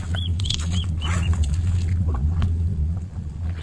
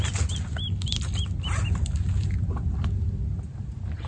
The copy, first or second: first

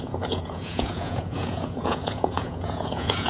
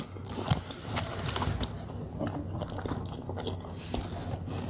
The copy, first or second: first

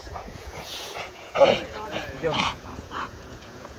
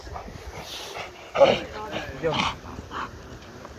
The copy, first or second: first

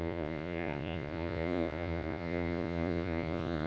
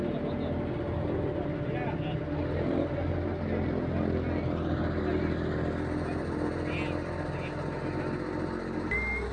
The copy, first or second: first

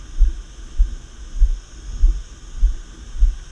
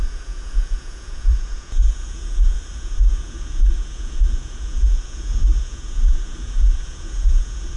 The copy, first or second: second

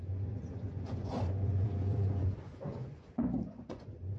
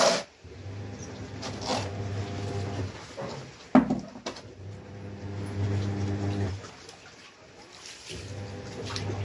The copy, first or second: first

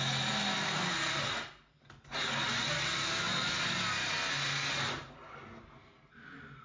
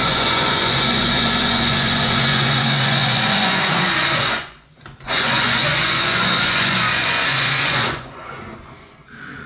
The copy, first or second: second